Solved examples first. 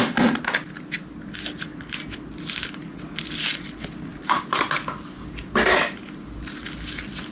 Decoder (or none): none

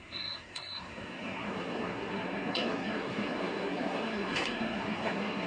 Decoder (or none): codec, SNAC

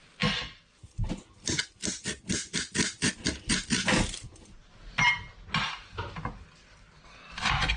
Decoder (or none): none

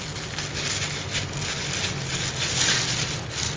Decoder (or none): none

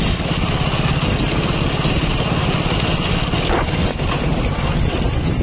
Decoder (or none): none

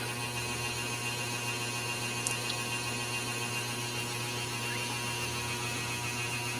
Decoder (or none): none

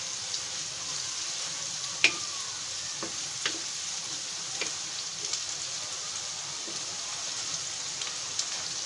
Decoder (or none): vocoder, BigVGAN v2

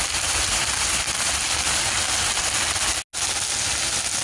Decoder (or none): none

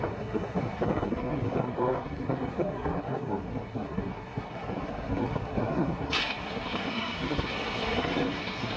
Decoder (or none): codec, SNAC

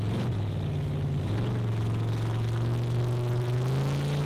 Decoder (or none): none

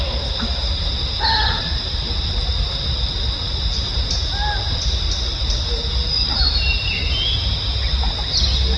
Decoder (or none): none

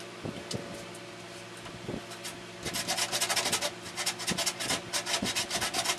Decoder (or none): none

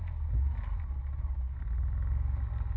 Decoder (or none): none